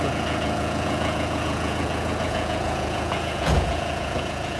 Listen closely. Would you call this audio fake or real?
fake